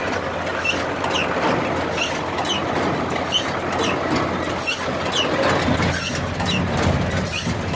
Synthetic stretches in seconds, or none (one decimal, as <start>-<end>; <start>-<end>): none